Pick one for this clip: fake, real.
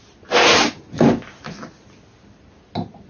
real